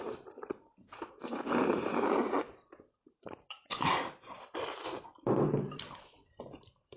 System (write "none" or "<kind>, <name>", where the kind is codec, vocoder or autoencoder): vocoder, BigVGAN v2